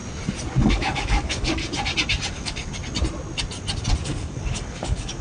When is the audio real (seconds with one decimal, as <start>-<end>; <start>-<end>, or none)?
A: 0.0-0.6; 1.6-2.3; 2.8-4.0